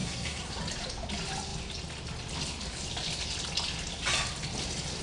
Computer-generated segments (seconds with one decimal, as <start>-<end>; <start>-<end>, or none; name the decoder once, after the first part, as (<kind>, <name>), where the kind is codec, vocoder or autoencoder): 0.0-0.6 (codec, SNAC)